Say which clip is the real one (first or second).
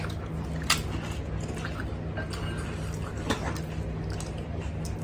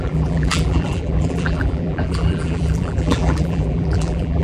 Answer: first